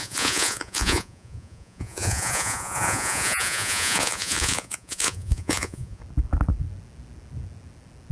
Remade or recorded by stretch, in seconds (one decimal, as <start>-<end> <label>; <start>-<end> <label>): 0.0-6.0 remade; 6.0-8.1 recorded